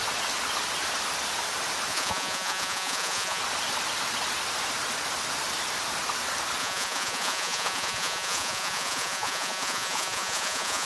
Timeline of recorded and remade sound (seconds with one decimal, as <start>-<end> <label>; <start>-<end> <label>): 0.0-1.9 recorded; 1.9-3.4 remade; 3.4-6.6 recorded; 6.6-10.9 remade